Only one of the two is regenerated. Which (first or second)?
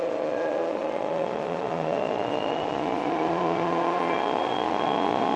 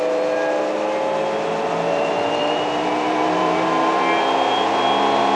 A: first